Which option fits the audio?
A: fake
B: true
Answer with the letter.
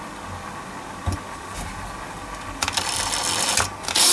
B